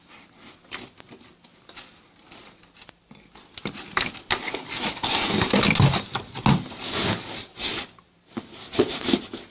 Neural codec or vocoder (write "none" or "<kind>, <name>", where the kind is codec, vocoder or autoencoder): none